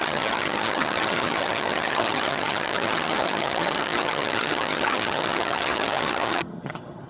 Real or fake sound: fake